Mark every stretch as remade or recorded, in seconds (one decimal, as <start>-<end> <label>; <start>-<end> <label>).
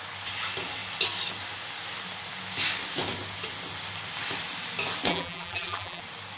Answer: 0.0-5.1 recorded; 5.1-6.0 remade; 6.0-6.4 recorded